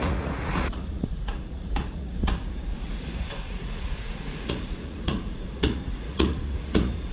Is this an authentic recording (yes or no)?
no